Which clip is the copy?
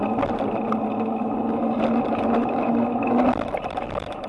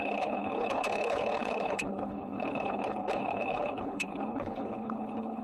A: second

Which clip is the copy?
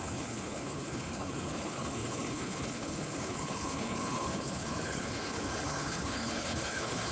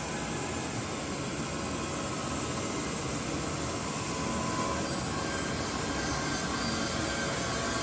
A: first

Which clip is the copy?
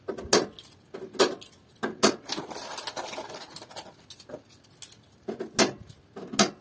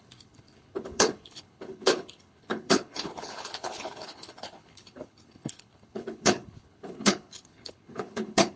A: second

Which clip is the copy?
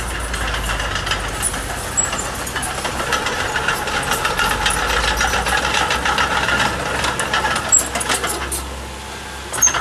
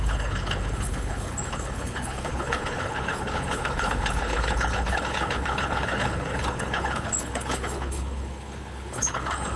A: second